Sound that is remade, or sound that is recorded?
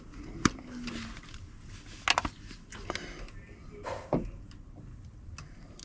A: recorded